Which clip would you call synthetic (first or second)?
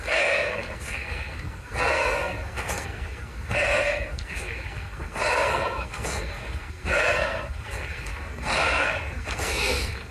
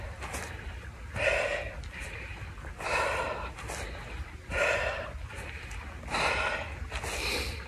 first